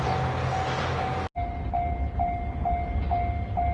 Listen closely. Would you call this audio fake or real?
real